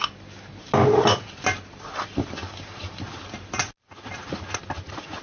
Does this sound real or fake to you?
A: real